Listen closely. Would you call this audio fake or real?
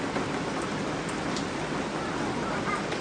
real